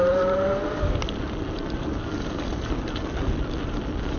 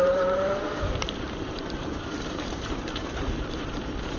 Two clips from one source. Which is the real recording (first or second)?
first